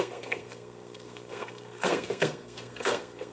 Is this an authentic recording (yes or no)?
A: no